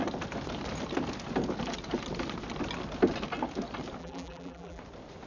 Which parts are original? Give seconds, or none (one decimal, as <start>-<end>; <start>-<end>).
0.0-4.0; 4.8-5.3